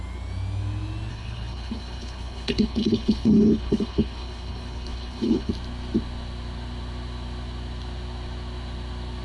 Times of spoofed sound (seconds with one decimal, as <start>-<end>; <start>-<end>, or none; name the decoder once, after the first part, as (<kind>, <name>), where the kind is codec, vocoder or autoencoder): 1.1-5.5 (codec, HILCodec)